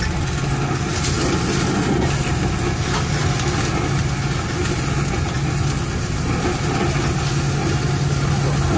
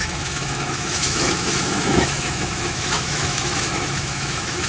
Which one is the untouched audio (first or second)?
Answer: first